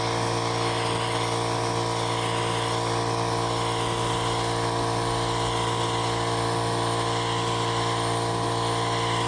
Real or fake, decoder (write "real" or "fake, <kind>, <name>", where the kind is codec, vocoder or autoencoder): real